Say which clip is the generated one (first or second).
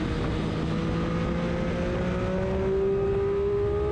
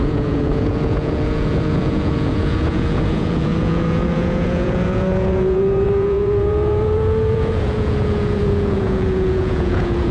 second